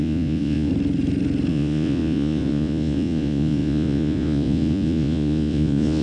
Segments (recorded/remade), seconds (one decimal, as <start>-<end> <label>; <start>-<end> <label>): 0.0-0.7 remade; 0.7-1.5 recorded; 1.5-6.0 remade